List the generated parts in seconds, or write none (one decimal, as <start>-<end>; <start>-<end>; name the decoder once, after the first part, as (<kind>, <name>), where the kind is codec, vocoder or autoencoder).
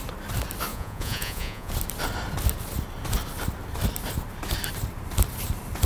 0.7-1.7 (vocoder, Vocos)